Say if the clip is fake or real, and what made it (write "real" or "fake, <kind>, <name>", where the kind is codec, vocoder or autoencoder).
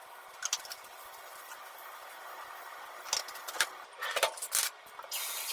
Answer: real